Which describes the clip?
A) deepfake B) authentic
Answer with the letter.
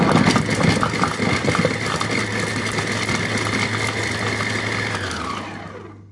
B